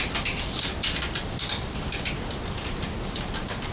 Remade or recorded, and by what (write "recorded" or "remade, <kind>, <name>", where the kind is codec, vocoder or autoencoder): recorded